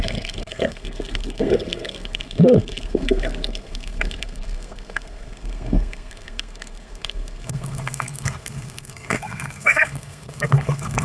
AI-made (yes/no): yes